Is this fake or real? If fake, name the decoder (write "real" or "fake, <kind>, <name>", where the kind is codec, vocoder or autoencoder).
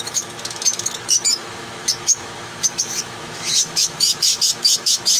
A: fake, autoencoder, DAC-VAE